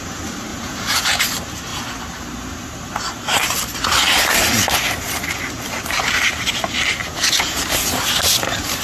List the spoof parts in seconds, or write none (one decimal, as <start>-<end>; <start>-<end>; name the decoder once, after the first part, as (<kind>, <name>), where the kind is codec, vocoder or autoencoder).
0.5-1.2 (vocoder, Vocos); 7.0-7.6